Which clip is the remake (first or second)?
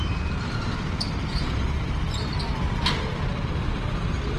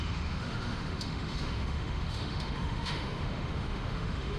second